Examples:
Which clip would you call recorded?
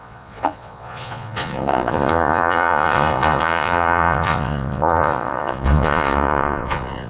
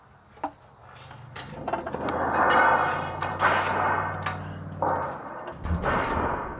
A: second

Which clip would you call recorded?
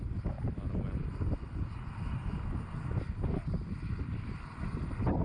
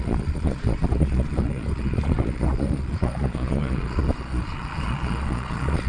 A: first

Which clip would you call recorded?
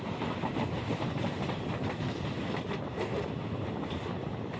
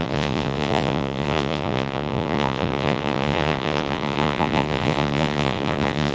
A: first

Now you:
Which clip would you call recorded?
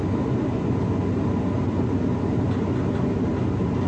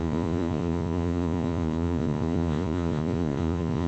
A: first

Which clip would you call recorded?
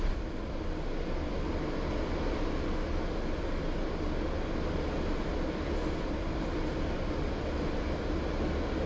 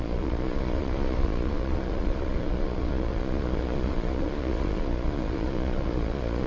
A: first